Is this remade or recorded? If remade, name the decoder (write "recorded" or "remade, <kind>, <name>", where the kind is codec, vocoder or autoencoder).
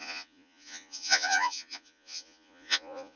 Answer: remade, vocoder, Vocos